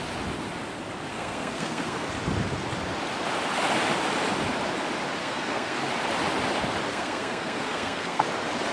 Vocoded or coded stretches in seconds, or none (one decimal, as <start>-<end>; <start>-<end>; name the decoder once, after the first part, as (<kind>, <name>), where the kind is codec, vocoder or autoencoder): 1.1-2.1 (codec, SNAC); 5.2-5.8; 6.9-8.2